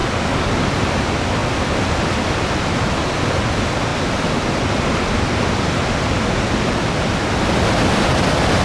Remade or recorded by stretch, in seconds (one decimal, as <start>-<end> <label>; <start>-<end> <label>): 0.0-0.7 remade; 0.7-8.6 recorded